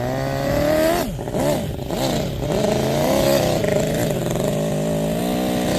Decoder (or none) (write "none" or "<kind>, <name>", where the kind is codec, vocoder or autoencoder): none